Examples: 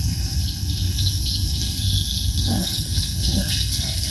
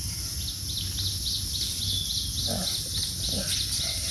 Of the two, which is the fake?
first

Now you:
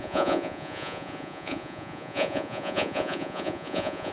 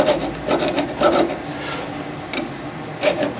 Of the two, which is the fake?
first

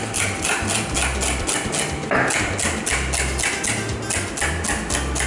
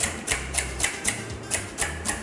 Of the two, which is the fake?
second